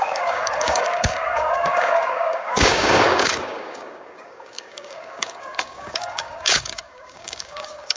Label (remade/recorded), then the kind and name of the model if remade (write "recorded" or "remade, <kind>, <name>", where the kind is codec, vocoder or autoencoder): remade, codec, DAC